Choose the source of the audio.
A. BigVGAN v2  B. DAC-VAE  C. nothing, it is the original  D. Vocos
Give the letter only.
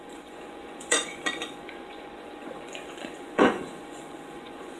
D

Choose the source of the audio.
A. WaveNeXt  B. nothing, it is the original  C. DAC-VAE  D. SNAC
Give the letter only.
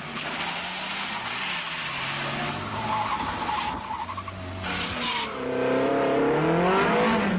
B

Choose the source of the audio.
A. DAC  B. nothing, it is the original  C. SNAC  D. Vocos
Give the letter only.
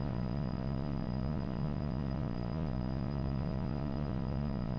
D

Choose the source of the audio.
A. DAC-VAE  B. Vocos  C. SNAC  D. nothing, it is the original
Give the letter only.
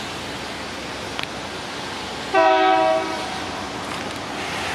D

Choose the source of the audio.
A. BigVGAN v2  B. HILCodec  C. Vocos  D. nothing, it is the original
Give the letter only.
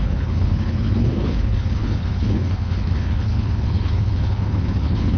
B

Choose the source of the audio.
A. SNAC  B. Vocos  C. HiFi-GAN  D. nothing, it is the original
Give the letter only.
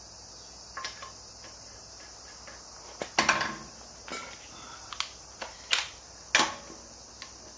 D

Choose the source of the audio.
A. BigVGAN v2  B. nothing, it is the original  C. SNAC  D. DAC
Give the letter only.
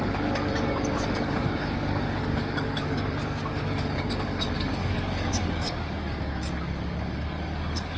D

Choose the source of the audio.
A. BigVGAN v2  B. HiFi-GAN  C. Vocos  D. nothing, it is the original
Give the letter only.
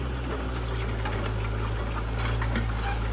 D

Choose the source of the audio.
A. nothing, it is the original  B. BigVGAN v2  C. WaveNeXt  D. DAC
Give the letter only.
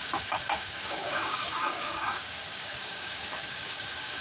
D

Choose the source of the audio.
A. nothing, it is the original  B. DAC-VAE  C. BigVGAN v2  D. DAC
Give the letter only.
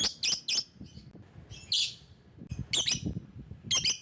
A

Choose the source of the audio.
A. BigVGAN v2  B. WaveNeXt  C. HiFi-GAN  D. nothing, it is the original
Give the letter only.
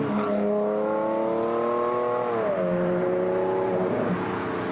D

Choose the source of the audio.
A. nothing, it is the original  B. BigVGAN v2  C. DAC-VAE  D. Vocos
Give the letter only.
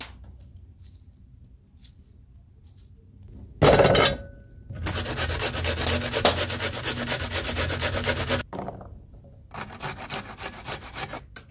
A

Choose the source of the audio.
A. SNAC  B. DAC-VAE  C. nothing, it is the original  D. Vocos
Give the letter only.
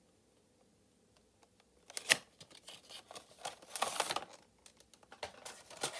C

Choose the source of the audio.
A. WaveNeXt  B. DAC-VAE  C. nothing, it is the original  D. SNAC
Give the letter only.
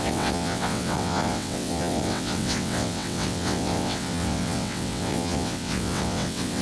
A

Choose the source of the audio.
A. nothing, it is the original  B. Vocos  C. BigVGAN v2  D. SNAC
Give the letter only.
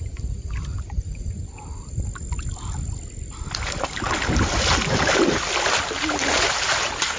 A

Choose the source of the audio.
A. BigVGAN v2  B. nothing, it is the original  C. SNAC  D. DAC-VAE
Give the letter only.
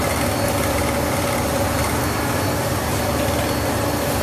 B